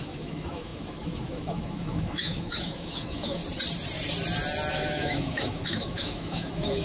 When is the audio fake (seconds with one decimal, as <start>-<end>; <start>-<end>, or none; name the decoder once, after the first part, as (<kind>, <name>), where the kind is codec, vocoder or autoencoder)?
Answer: 0.0-3.4 (autoencoder, DAC-VAE); 4.7-6.8